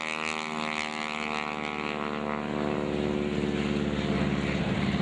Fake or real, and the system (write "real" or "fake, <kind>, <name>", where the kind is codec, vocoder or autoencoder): real